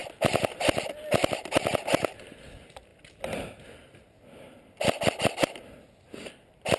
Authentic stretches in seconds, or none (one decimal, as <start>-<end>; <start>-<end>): 0.0-6.8